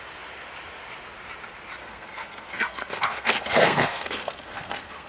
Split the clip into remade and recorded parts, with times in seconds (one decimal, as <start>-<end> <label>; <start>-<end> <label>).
0.0-1.8 recorded; 1.8-5.1 remade